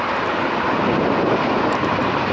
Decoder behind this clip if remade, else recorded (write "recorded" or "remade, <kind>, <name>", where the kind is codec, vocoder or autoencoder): remade, vocoder, BigVGAN v2